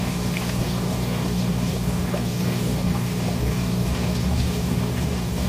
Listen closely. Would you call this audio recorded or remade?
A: remade